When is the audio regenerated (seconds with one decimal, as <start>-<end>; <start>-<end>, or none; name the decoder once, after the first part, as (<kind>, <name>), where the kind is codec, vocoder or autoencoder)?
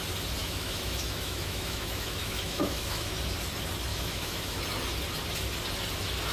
0.4-3.1 (autoencoder, DAC-VAE); 3.9-4.6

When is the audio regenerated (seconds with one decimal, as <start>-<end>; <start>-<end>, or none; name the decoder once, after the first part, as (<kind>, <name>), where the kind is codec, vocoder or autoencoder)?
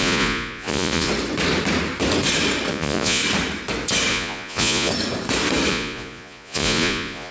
0.0-1.1 (vocoder, Vocos); 2.7-3.2; 4.1-4.9; 5.7-7.3